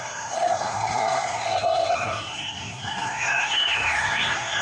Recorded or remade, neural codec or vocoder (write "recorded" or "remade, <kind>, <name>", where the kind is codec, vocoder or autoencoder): remade, codec, SNAC